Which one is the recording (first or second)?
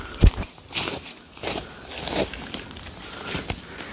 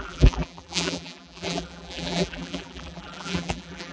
first